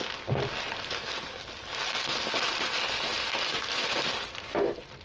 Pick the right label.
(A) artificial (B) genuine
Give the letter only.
B